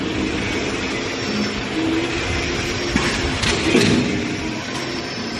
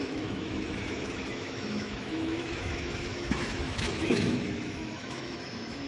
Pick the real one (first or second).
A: first